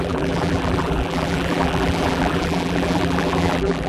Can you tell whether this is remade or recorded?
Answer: remade